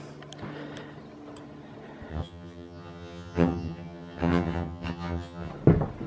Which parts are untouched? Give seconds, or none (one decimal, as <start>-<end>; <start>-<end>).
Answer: 0.0-2.1; 5.5-6.1